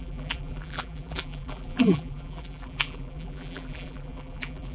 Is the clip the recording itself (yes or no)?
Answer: no